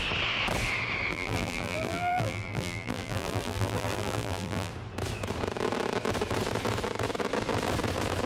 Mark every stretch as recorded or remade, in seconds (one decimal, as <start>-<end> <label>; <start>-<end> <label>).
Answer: 0.0-1.1 recorded; 1.1-4.7 remade; 4.7-8.3 recorded